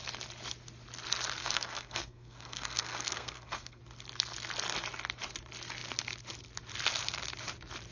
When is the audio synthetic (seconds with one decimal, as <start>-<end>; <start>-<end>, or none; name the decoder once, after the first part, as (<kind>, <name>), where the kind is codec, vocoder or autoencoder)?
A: 1.4-3.8 (codec, SNAC)